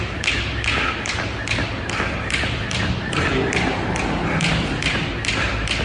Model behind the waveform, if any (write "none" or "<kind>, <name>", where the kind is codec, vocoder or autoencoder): none